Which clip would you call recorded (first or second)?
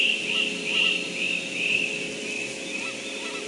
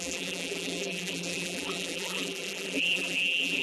first